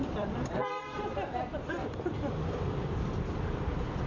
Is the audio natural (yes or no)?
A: no